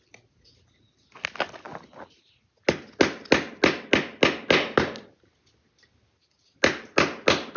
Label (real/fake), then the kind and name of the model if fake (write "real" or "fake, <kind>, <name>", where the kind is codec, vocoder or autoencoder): real